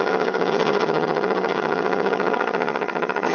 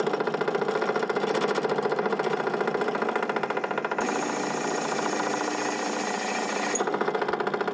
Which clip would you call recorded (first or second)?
second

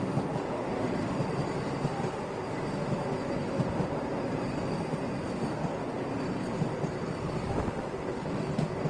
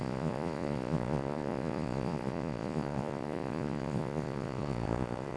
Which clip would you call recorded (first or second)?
first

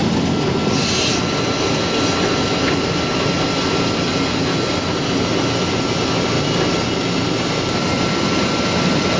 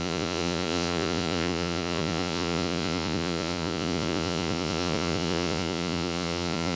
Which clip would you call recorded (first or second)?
first